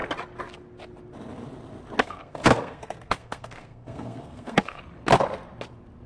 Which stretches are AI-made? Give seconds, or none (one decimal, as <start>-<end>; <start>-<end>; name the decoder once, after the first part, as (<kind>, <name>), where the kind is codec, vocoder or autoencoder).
2.0-4.8 (codec, SNAC)